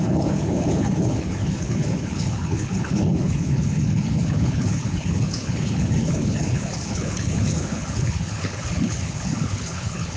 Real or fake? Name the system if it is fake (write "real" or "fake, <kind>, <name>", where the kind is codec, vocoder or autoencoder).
fake, codec, HILCodec